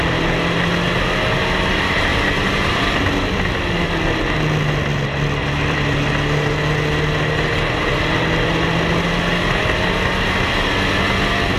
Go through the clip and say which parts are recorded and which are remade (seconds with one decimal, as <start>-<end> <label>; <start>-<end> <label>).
0.0-2.1 recorded; 2.1-3.6 remade; 3.6-5.4 recorded; 5.4-6.1 remade; 6.1-11.6 recorded